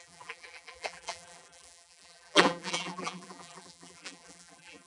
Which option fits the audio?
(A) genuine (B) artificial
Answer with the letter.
B